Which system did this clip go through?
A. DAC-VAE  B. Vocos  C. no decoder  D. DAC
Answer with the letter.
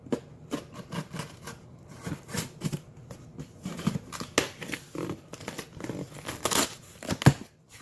C